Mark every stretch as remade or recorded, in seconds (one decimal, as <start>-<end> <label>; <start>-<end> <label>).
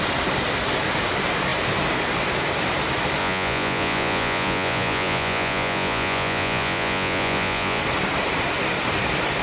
0.0-3.2 recorded; 3.2-7.8 remade; 7.8-9.4 recorded